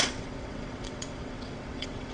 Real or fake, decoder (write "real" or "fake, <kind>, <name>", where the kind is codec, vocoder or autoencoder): fake, vocoder, WaveNeXt